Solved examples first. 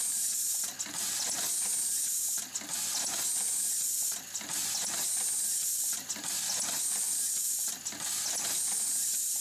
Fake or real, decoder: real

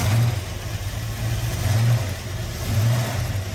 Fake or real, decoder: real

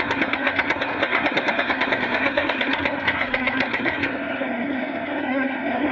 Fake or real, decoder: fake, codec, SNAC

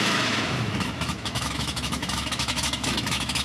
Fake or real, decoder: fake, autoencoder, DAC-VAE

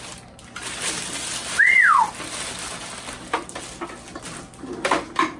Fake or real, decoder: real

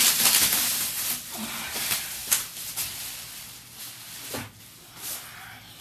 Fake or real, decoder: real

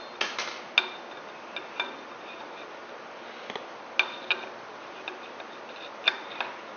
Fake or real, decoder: real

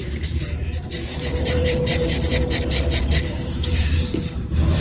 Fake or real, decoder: fake, vocoder, BigVGAN v2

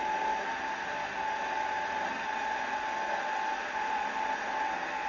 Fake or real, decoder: real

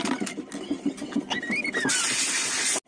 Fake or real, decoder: real